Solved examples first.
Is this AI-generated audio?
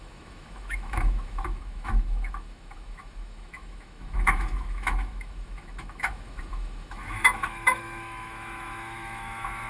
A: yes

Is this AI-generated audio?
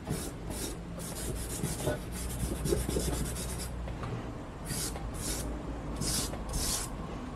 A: no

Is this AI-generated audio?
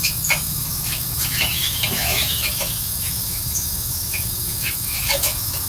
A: yes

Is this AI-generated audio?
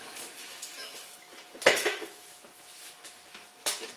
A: yes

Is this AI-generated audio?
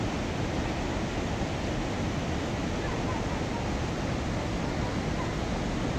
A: no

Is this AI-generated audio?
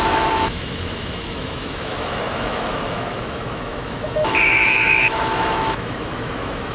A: yes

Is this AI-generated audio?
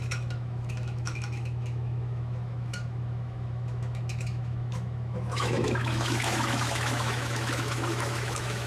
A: yes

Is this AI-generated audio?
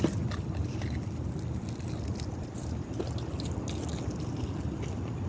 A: no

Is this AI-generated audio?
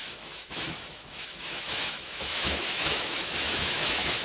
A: yes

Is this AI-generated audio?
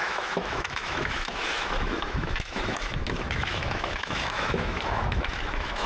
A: yes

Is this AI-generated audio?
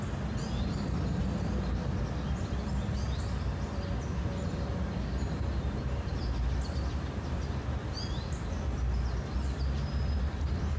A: no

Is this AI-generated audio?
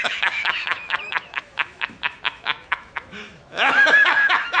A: yes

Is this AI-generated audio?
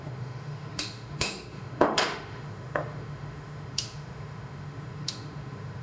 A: yes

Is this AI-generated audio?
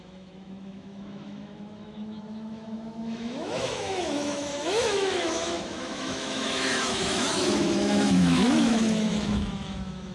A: yes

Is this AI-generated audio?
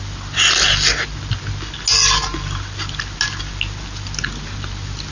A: no